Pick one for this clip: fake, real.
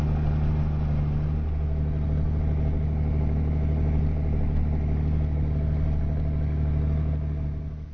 real